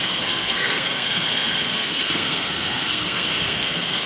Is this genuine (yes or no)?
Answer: no